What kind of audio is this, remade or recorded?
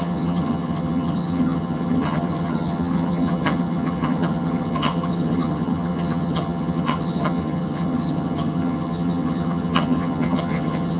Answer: remade